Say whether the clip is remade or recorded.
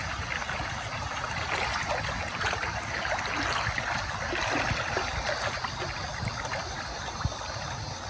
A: recorded